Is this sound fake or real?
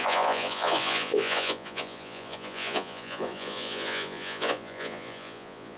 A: fake